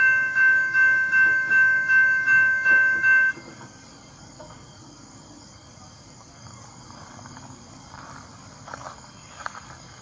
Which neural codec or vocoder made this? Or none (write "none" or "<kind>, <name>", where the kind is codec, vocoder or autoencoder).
codec, DAC